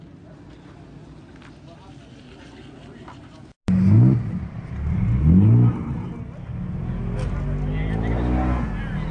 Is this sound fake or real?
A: real